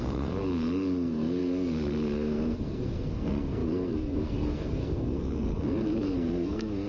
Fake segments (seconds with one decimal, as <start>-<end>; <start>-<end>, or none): 0.0-6.9

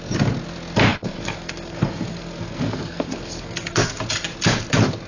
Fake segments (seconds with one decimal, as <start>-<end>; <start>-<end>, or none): 0.9-4.0

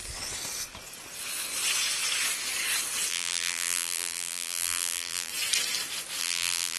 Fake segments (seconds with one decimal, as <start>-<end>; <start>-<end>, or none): 3.1-5.3; 6.2-6.8

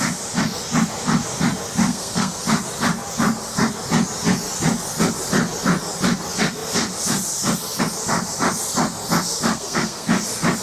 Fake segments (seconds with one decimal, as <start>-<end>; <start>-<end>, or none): 1.9-2.4; 9.5-10.1

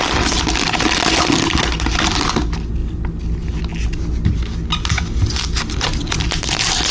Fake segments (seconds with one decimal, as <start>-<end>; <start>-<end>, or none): none

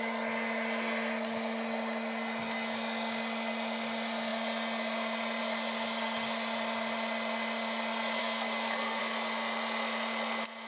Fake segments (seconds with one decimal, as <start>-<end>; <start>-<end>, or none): 8.2-9.0